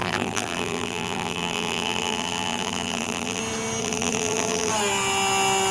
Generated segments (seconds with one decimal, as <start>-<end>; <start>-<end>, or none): 0.0-3.4; 3.8-4.7